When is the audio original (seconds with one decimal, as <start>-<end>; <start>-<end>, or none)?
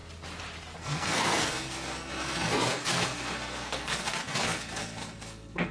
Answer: 0.0-0.8